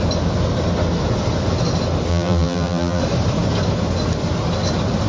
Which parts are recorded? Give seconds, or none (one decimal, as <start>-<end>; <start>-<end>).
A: 0.0-2.1; 3.0-5.1